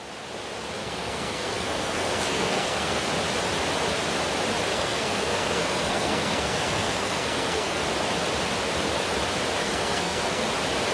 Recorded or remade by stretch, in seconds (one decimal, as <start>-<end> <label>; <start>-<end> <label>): 0.0-0.8 recorded; 0.8-3.1 remade; 3.1-4.7 recorded; 4.7-7.8 remade; 7.8-9.6 recorded; 9.6-10.5 remade; 10.5-10.9 recorded